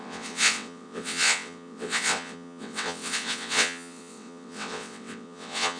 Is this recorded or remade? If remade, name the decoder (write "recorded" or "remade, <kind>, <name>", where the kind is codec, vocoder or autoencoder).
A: remade, vocoder, WaveNeXt